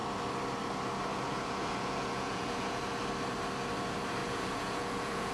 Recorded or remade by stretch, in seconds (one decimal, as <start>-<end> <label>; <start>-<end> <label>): 0.0-1.1 recorded; 1.1-2.9 remade; 2.9-4.2 recorded; 4.2-5.3 remade